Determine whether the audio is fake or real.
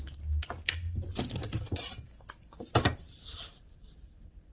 real